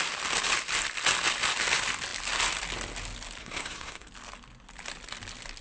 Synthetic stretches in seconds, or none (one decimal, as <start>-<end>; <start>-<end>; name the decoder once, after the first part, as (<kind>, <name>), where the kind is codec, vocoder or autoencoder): 3.4-4.1 (codec, SNAC)

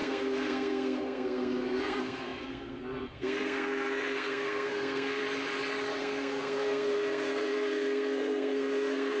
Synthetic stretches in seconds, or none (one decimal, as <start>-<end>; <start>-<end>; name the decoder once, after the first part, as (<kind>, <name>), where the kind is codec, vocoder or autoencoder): 0.0-5.2 (codec, SNAC); 6.0-9.2

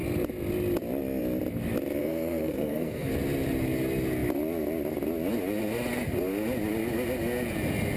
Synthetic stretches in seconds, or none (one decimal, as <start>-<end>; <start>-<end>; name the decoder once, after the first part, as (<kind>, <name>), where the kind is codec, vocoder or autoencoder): 2.0-3.1 (codec, SNAC)